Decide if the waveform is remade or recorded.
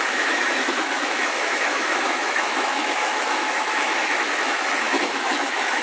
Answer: remade